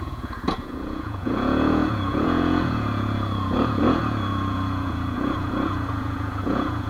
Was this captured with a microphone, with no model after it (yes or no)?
no